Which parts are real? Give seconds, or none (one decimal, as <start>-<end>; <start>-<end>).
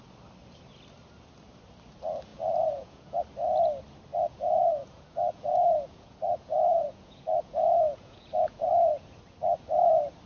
0.0-2.3; 3.2-4.1; 8.7-10.3